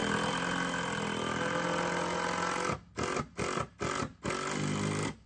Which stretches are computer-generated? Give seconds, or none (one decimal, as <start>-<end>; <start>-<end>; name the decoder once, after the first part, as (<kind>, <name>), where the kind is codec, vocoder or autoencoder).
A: none